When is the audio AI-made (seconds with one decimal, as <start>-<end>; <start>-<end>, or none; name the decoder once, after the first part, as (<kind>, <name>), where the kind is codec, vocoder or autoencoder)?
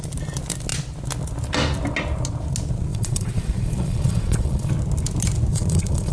2.9-4.7 (vocoder, Vocos); 5.5-6.1